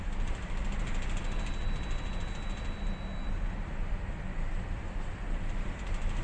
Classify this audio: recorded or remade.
recorded